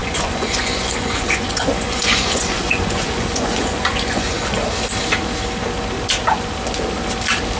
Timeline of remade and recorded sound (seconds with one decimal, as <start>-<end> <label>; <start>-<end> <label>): 0.0-4.6 remade; 4.6-7.6 recorded